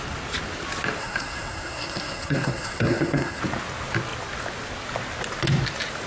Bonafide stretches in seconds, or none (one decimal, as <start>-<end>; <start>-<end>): 0.0-1.0; 3.4-6.1